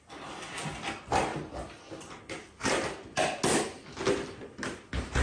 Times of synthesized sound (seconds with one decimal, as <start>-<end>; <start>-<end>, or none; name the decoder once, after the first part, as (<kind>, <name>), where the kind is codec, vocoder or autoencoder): none